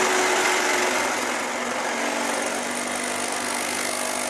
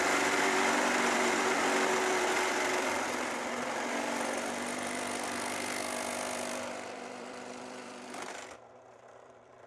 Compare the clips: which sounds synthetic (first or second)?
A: second